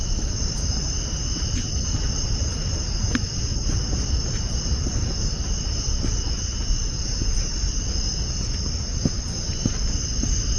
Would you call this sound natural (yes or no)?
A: yes